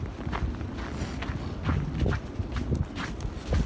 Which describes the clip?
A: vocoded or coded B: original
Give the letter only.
B